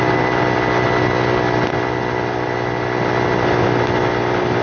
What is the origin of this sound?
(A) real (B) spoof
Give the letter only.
A